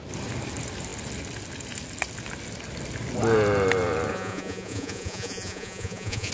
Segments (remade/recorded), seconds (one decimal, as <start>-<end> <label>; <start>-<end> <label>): 0.0-4.1 recorded; 4.1-6.3 remade